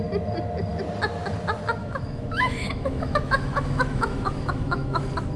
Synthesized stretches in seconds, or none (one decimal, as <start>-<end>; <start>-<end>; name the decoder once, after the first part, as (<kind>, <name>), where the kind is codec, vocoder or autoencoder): 1.8-5.0 (autoencoder, DAC-VAE)